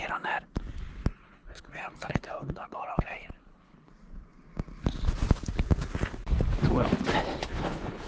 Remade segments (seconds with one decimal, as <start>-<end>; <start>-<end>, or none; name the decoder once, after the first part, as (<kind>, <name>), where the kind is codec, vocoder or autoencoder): 1.1-3.9 (codec, HILCodec); 7.4-8.1

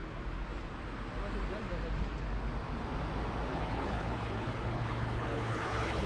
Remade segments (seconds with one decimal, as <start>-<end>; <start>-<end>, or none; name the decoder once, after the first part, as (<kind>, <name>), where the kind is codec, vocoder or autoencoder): 3.5-6.1 (codec, HILCodec)

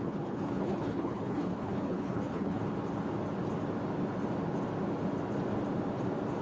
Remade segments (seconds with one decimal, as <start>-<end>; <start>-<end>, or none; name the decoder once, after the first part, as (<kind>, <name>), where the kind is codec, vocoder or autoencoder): 0.0-2.6 (codec, HILCodec)